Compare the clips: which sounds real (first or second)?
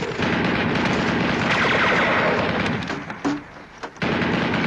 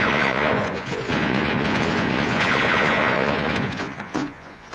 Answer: first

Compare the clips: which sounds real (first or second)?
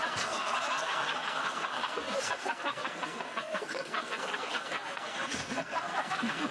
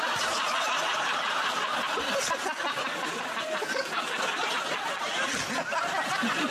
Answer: second